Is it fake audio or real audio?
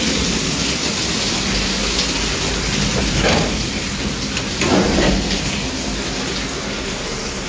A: real